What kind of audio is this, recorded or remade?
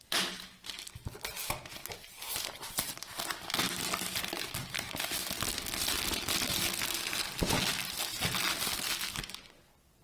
recorded